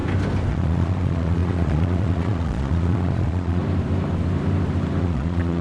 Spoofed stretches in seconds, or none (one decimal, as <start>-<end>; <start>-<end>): 0.5-3.6; 5.0-5.6